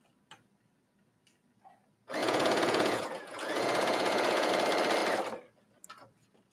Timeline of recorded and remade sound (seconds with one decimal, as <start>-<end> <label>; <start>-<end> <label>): 0.0-2.2 recorded; 2.2-4.5 remade; 4.5-6.5 recorded